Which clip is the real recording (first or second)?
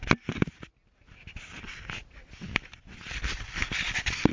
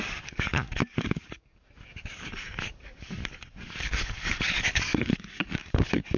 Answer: first